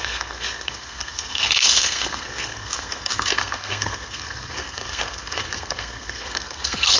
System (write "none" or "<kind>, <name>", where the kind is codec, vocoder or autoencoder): codec, SNAC